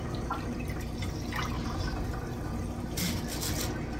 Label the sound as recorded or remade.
recorded